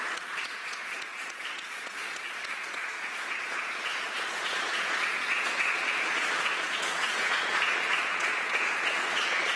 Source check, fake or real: fake